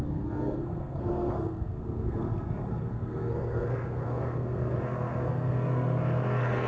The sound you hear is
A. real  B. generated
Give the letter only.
B